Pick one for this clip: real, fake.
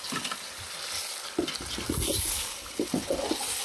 real